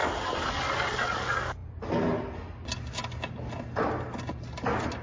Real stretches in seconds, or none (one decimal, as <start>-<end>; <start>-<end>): 0.0-5.0

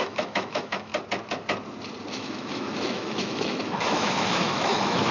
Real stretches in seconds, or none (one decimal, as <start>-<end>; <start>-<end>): 0.9-2.1

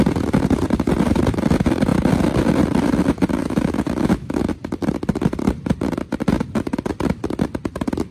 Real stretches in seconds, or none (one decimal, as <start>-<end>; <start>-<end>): 0.0-3.4; 4.5-8.1

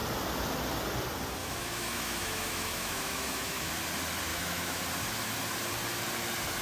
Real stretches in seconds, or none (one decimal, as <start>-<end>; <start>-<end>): 0.0-1.4; 3.7-4.3; 4.8-6.6

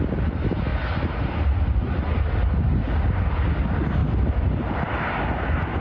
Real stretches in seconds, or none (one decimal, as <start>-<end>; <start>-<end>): 0.0-5.8

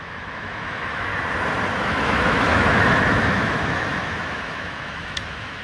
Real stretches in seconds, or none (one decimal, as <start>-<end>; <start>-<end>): 1.1-1.8

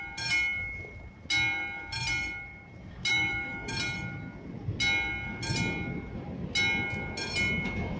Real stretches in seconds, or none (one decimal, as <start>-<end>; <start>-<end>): 0.0-3.1; 3.7-8.0